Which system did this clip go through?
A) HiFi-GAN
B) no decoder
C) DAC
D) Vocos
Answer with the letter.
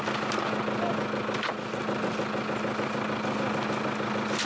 B